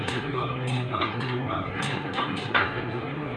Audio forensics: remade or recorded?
remade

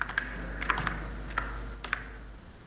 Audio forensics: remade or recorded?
recorded